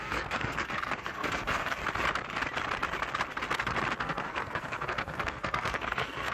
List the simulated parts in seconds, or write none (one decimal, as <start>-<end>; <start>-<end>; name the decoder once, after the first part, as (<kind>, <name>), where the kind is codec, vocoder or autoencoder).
0.0-1.8 (codec, SNAC); 4.0-6.3